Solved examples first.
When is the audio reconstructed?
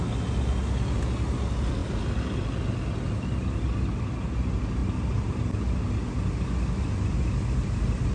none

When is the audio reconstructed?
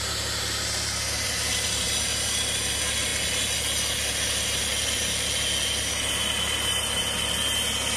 0.0-3.1 (vocoder, BigVGAN v2); 4.1-4.7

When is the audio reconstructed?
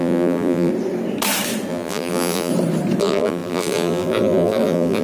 0.0-0.7 (vocoder, BigVGAN v2); 1.7-2.5; 3.0-5.0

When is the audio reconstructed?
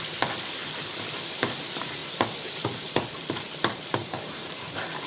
0.0-0.6 (vocoder, BigVGAN v2); 1.3-5.1